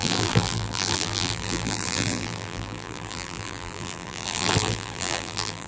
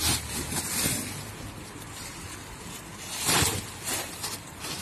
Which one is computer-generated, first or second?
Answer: first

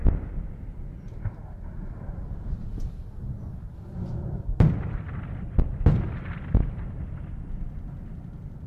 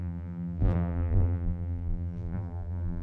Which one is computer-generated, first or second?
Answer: second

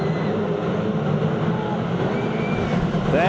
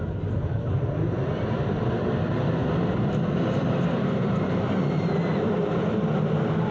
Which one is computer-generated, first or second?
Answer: second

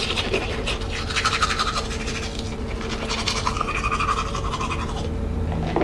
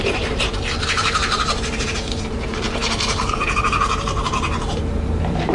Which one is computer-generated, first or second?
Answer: second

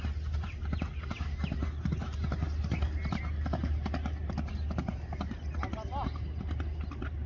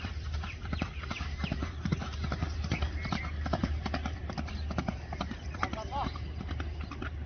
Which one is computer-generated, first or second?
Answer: second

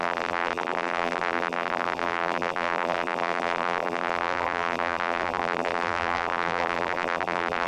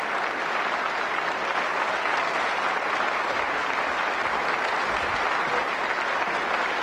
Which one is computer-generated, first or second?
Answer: first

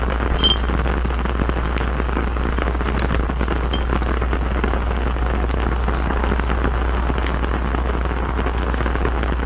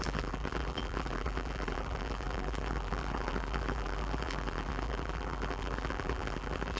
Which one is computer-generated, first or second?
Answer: second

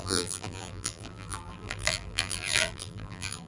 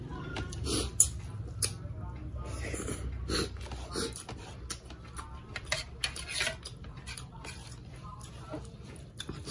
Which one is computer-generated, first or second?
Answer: first